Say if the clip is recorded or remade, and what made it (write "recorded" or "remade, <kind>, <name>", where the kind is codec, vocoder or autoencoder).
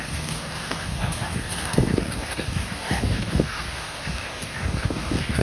remade, codec, DAC